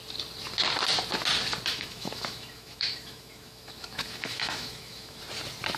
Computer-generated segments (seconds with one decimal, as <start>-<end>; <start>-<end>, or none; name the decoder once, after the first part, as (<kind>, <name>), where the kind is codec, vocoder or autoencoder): 1.7-5.2 (autoencoder, DAC-VAE)